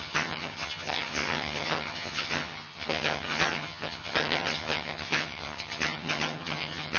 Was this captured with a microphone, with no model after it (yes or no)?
no